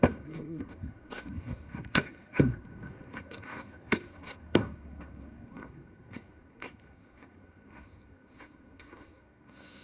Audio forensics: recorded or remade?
remade